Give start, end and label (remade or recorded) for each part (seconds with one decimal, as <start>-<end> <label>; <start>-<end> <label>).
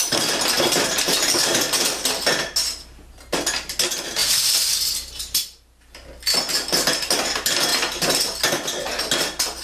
0.0-9.6 recorded